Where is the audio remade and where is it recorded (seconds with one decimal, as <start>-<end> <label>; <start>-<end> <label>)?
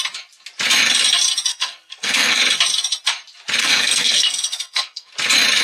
0.0-1.5 recorded; 1.5-2.4 remade; 2.4-3.6 recorded; 3.6-5.1 remade; 5.1-5.6 recorded